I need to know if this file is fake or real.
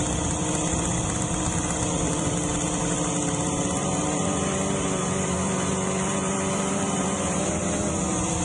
fake